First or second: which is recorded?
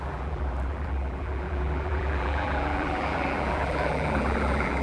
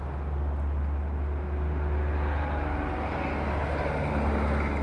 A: second